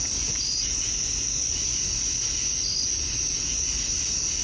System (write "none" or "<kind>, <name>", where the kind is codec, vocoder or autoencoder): none